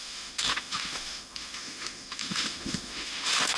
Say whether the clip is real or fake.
fake